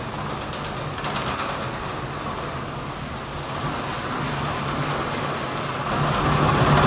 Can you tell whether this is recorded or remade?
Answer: recorded